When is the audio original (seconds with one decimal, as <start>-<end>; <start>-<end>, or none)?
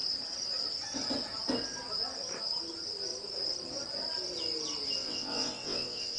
0.0-5.0